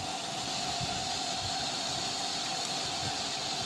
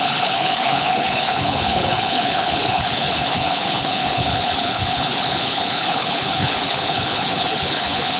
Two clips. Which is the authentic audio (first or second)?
first